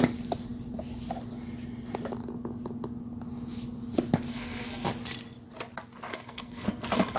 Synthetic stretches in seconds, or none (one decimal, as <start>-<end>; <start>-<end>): 4.3-4.9; 6.1-7.2